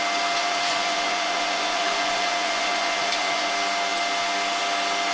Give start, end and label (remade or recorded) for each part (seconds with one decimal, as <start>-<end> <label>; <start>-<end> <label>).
0.0-0.4 recorded; 0.4-3.5 remade; 3.5-5.1 recorded